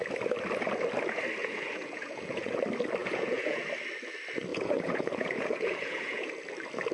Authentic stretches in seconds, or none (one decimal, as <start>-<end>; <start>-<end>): 0.0-1.4; 2.6-3.0; 3.6-4.5; 6.3-6.9